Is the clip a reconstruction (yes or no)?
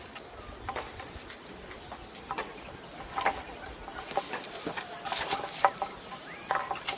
no